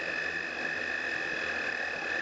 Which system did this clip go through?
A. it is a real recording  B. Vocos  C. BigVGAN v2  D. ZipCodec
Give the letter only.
A